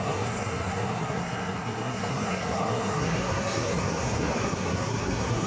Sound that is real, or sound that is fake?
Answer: fake